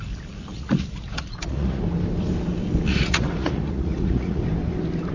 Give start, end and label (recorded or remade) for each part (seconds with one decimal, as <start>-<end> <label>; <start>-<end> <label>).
0.0-0.5 recorded; 0.5-1.8 remade; 1.8-2.9 recorded; 2.9-4.4 remade; 4.4-5.1 recorded